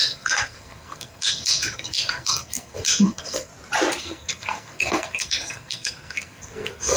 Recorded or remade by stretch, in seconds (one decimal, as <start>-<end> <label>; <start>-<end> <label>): 0.0-3.5 remade; 3.5-4.0 recorded; 4.0-7.0 remade